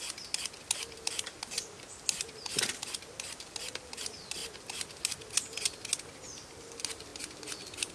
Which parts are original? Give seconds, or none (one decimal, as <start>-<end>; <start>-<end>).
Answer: 0.0-7.9